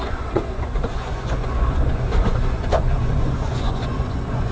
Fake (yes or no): yes